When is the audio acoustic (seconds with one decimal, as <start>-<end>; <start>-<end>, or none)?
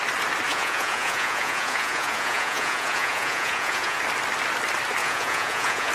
0.0-0.5; 4.0-5.0